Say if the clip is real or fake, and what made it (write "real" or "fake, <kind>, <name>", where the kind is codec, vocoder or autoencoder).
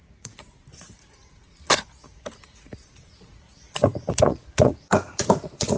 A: fake, vocoder, Vocos